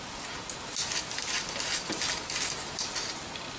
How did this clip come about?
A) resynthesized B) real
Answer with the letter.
B